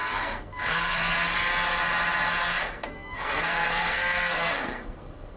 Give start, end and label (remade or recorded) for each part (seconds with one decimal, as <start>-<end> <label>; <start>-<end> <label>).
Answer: 0.0-1.1 remade; 1.1-2.4 recorded; 2.4-5.4 remade